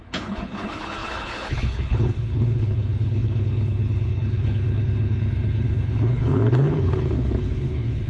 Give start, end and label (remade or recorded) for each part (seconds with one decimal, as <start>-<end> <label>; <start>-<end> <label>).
0.0-8.1 remade